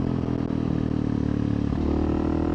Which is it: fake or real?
real